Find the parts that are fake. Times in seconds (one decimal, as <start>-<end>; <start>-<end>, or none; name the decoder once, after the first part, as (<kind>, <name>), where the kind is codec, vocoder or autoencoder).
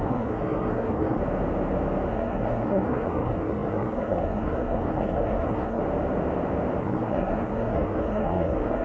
0.0-1.2 (codec, SNAC); 2.1-5.8; 6.8-8.8